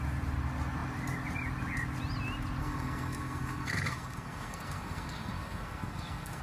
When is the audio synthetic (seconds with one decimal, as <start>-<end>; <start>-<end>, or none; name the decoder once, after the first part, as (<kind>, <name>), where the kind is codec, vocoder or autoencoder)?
2.6-6.4 (codec, SNAC)